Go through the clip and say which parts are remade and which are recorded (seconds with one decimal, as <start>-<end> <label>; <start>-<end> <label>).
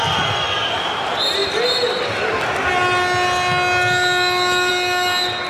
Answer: 0.0-5.5 recorded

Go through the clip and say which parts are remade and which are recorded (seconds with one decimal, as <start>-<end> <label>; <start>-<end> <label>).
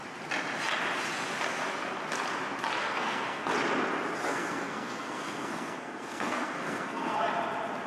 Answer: 0.0-2.8 recorded; 2.8-3.4 remade; 3.4-4.3 recorded; 4.3-7.2 remade; 7.2-7.9 recorded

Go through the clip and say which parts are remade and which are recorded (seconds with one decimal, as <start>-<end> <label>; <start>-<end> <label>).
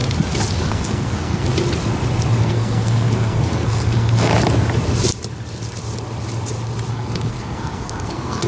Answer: 0.0-0.7 recorded; 0.7-1.5 remade; 1.5-2.4 recorded; 2.4-4.3 remade; 4.3-6.9 recorded; 6.9-8.5 remade